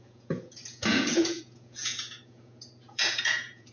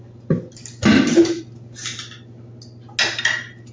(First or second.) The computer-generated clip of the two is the first